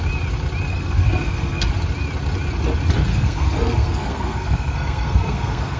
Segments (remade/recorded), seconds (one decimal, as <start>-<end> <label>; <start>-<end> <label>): 0.0-0.7 recorded; 0.7-1.7 remade; 1.7-3.1 recorded; 3.1-5.8 remade